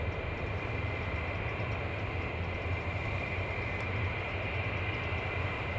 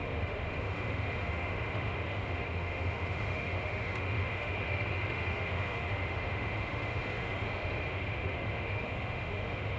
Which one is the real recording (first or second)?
first